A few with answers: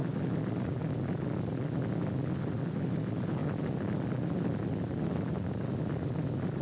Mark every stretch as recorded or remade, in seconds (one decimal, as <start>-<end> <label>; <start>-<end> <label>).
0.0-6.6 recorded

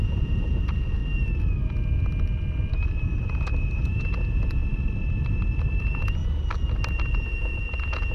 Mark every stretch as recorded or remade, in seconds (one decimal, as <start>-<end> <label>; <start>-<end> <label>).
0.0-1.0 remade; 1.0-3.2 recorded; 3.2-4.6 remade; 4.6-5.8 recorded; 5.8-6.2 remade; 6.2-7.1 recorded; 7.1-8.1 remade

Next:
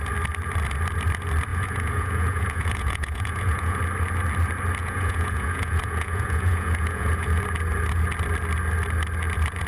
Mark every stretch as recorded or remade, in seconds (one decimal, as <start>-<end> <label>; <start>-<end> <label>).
0.0-1.5 recorded; 1.5-3.8 remade; 3.8-4.8 recorded; 4.8-7.4 remade; 7.4-9.7 recorded